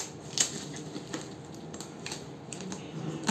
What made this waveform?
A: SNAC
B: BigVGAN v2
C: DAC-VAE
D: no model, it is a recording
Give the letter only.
D